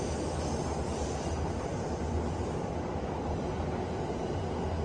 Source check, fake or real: real